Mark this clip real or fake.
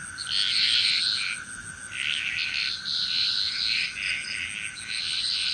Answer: real